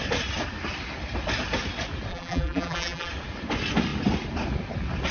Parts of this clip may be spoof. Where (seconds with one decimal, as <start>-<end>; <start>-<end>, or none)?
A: 2.1-3.1